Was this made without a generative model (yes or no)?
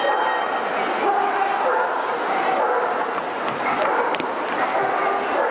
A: yes